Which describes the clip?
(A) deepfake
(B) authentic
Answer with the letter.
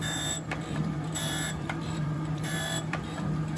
A